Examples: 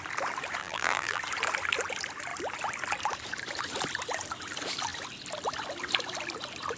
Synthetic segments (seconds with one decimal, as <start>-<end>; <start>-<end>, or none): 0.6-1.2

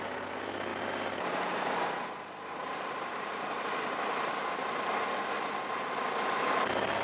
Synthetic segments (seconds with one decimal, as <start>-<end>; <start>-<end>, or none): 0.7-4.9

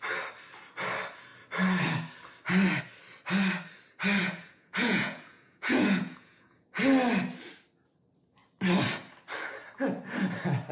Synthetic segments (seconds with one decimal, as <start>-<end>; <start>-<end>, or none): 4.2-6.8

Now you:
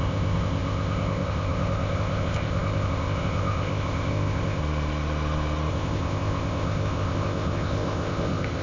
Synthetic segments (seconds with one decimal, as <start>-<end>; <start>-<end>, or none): 0.0-4.6; 5.7-8.6